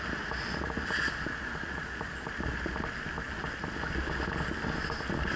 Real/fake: real